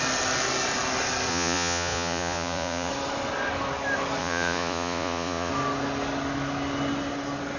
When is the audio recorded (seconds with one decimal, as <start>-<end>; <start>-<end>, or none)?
0.0-1.3; 2.9-4.2; 5.5-7.6